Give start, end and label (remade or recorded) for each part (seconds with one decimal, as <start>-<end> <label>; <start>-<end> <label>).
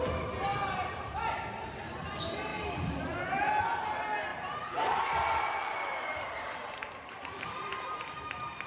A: 0.0-0.5 recorded; 0.5-1.1 remade; 1.1-2.5 recorded; 2.5-3.4 remade; 3.4-4.3 recorded; 4.3-8.7 remade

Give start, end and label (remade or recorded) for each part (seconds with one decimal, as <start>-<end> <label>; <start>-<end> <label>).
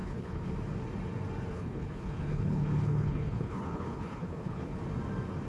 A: 0.0-0.5 remade; 0.5-1.5 recorded; 1.5-4.8 remade; 4.8-5.5 recorded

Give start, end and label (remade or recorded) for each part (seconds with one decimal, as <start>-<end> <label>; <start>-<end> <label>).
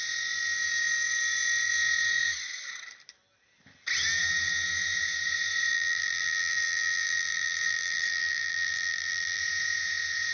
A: 0.0-5.7 recorded; 5.7-9.4 remade; 9.4-10.3 recorded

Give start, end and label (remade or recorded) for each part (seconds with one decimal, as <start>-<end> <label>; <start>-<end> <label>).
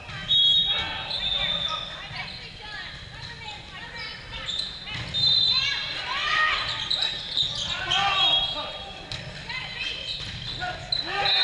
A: 0.0-11.4 recorded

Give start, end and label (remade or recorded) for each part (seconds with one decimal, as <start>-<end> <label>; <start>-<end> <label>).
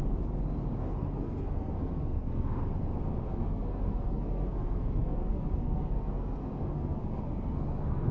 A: 0.0-0.8 recorded; 0.8-2.5 remade; 2.5-3.3 recorded; 3.3-8.1 remade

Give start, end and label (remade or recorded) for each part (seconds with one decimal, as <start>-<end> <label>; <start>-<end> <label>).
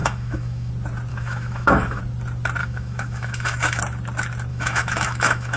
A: 0.0-0.7 remade; 0.7-1.1 recorded; 1.1-2.0 remade; 2.0-2.6 recorded; 2.6-3.8 remade; 3.8-4.5 recorded; 4.5-5.6 remade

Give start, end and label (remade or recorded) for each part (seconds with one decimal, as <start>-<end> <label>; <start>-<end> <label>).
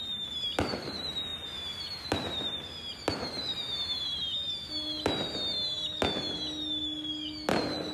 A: 0.0-7.9 recorded